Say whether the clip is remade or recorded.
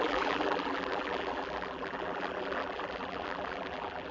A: remade